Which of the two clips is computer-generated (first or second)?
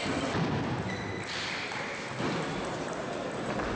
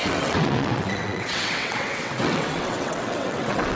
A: second